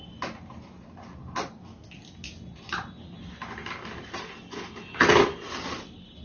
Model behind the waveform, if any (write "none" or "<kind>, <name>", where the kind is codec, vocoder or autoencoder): none